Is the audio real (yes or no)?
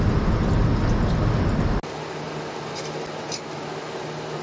yes